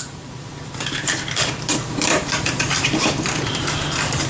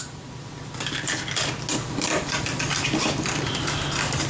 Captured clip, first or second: second